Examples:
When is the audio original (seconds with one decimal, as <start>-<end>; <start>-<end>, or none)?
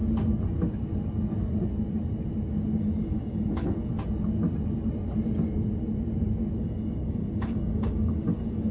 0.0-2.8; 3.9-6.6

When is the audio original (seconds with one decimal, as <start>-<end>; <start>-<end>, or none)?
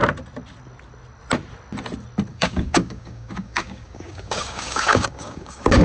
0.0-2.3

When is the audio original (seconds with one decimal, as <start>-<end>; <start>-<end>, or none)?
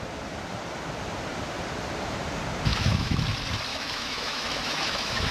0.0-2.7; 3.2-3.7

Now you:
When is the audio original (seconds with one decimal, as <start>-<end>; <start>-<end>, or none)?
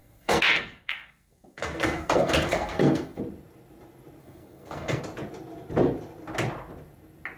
3.2-4.2; 5.0-7.4